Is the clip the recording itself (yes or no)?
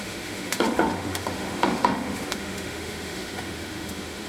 no